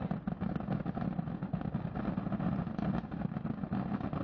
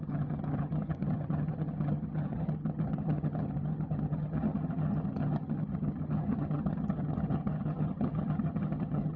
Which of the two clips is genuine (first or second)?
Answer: first